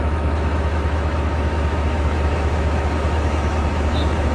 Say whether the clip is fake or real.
fake